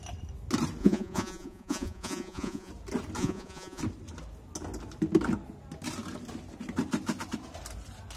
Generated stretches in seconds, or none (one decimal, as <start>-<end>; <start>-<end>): 0.8-2.7; 3.2-3.8